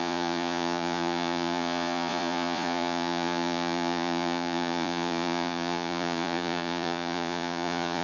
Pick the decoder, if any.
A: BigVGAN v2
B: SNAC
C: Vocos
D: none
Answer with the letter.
C